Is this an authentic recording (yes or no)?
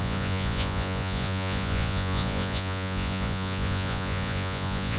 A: no